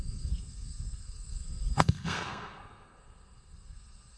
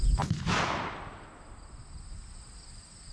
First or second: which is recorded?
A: second